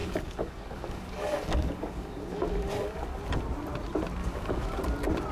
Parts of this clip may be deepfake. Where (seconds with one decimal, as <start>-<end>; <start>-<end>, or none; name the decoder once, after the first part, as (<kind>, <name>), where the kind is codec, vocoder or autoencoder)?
0.0-3.2 (codec, DAC); 4.2-4.8